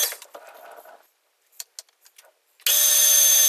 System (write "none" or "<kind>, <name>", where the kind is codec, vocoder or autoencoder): none